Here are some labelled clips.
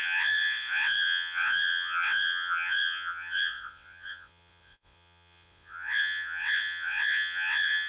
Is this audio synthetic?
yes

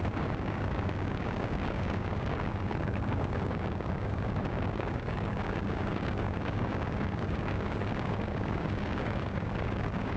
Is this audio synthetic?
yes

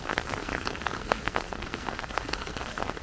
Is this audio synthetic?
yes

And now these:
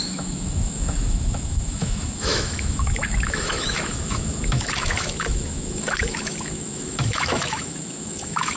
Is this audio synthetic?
yes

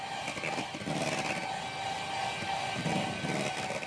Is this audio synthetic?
no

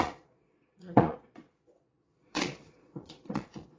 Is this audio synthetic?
yes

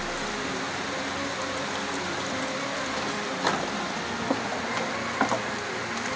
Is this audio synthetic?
no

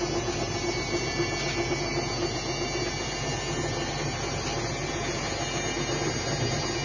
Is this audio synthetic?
no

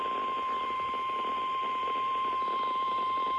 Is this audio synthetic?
yes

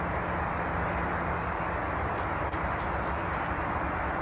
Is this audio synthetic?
no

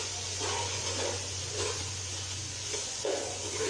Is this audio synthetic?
yes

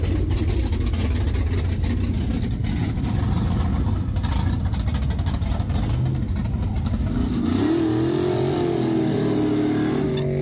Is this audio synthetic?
no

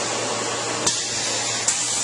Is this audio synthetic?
no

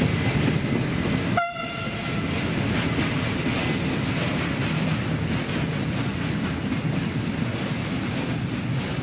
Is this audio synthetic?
no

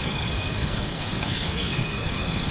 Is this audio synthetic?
yes